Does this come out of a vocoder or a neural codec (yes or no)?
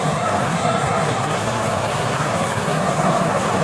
yes